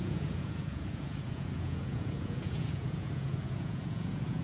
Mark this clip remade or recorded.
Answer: remade